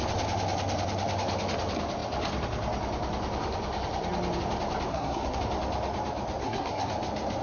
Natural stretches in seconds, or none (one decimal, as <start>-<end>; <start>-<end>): 0.0-4.9; 5.4-6.4; 6.9-7.4